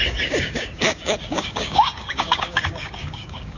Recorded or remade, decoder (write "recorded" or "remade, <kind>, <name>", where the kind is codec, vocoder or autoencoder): remade, codec, DAC